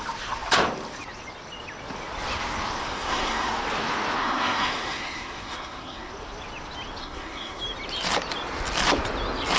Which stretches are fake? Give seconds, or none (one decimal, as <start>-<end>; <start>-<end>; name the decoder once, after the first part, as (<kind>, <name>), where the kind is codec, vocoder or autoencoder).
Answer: 2.8-3.5 (codec, SNAC); 4.2-6.1; 7.0-7.6